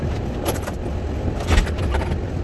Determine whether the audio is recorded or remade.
remade